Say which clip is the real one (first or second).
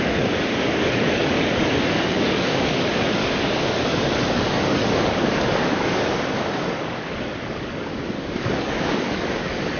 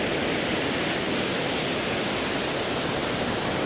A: second